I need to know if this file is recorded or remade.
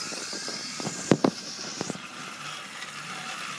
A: recorded